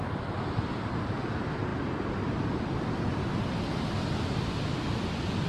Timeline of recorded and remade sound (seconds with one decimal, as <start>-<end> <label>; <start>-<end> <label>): 0.0-5.5 recorded